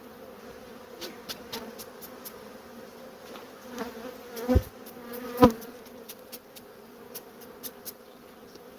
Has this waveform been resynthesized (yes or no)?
no